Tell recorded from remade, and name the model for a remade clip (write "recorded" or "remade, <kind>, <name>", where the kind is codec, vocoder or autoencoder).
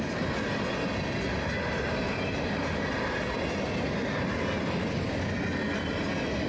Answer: recorded